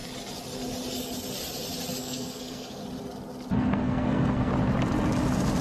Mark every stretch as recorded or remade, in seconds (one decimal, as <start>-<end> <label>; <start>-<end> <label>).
0.0-2.0 recorded; 2.0-2.8 remade; 2.8-3.5 recorded; 3.5-4.5 remade; 4.5-5.6 recorded